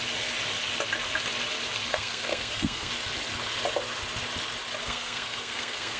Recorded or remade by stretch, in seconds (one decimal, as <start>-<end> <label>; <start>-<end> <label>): 0.0-1.9 recorded; 1.9-2.9 remade; 2.9-4.8 recorded; 4.8-6.0 remade